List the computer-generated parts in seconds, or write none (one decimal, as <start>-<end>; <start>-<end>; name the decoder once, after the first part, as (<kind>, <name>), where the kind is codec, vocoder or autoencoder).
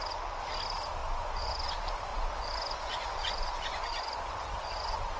1.0-1.7 (vocoder, Vocos); 2.1-5.2